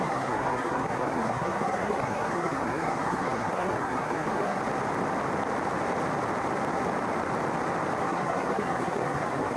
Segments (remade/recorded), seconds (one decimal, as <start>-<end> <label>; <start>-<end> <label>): 0.0-4.6 remade; 4.6-8.0 recorded; 8.0-9.6 remade